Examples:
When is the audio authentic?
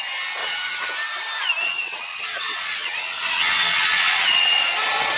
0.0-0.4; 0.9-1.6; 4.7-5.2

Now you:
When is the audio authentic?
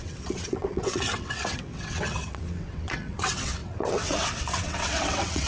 none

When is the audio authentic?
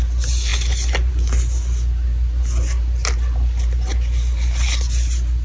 0.0-5.4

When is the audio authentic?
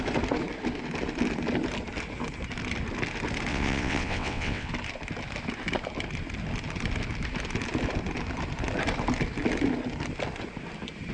0.0-3.5; 4.7-11.1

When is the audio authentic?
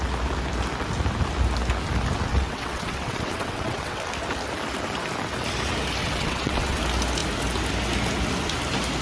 0.0-2.3; 4.0-6.0; 6.8-9.0